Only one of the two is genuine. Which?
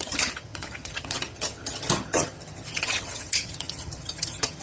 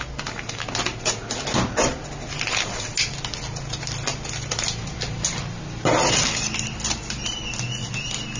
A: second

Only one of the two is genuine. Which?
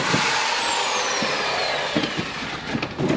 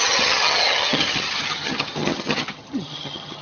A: first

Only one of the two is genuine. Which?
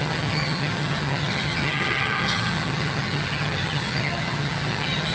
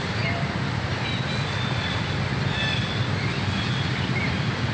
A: second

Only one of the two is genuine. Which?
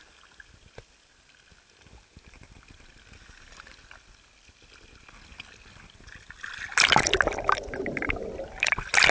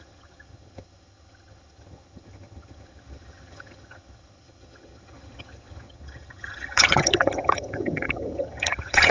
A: first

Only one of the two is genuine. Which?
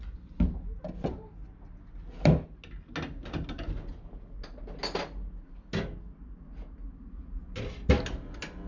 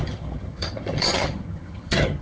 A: first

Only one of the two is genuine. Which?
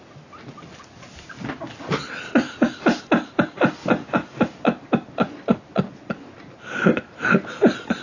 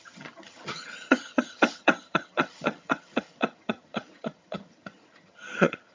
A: first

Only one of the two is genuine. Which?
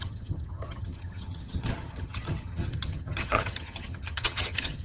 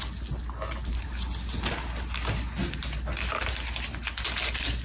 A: second